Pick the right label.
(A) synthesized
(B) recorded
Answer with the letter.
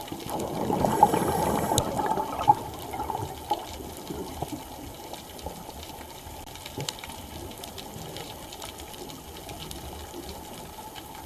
B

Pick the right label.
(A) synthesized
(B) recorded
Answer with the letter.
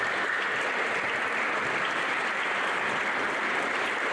A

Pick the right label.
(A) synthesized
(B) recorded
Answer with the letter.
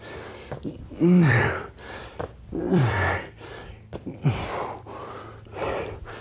A